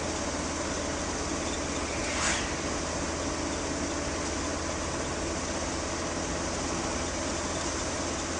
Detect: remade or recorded recorded